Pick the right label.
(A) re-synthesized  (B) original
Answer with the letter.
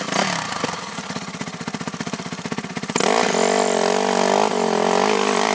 B